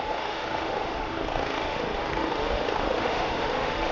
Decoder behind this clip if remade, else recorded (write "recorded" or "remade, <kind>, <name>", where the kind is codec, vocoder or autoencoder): remade, autoencoder, DAC-VAE